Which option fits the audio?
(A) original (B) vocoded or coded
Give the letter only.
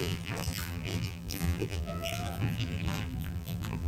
B